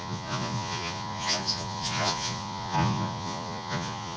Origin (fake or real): fake